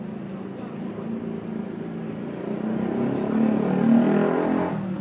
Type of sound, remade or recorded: recorded